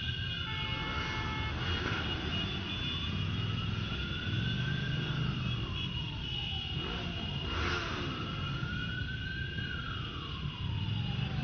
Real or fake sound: real